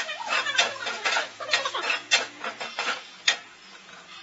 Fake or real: fake